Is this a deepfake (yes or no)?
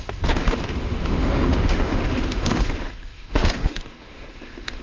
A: yes